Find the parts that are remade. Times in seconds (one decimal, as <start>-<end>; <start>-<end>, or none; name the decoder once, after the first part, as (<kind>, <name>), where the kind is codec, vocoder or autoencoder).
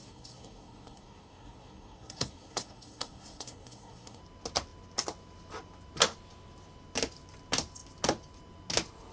0.0-4.2 (codec, SNAC)